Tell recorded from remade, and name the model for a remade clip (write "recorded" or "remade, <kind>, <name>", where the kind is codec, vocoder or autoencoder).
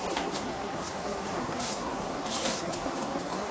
remade, codec, SNAC